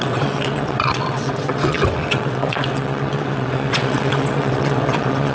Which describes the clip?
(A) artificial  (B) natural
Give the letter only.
A